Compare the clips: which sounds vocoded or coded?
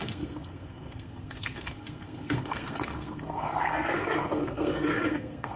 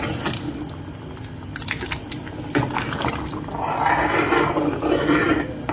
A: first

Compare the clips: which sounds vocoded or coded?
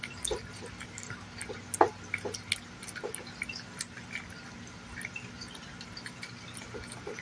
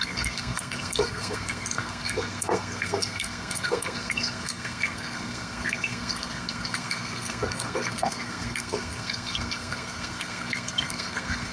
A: second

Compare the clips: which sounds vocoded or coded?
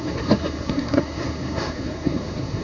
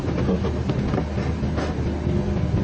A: first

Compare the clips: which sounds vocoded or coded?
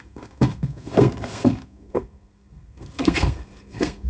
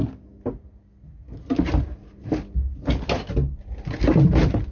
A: first